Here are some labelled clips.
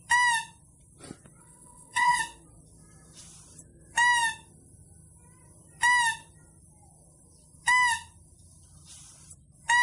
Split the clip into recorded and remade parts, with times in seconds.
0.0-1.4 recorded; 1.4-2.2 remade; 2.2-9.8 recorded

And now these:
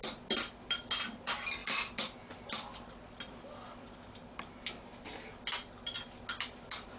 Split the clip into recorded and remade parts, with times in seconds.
0.0-7.0 recorded

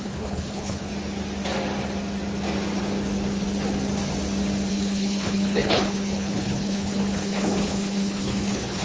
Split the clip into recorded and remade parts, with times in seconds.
0.0-0.9 remade; 0.9-4.7 recorded; 4.7-8.8 remade

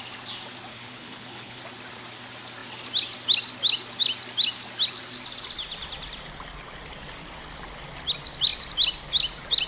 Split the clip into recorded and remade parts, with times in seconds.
0.0-0.7 recorded; 0.7-1.6 remade; 1.6-9.7 recorded

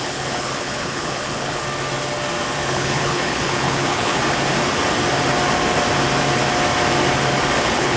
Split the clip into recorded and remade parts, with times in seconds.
0.0-1.6 remade; 1.6-2.7 recorded; 2.7-4.2 remade; 4.2-7.6 recorded; 7.6-8.0 remade

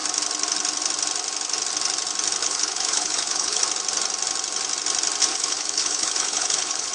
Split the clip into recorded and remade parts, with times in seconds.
0.0-2.4 recorded; 2.4-3.6 remade; 3.6-5.3 recorded; 5.3-6.9 remade

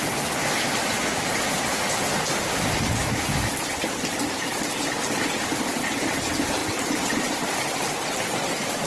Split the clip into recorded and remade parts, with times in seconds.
0.0-8.9 recorded